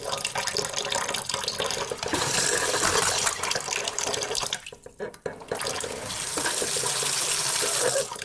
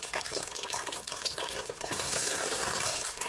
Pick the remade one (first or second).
second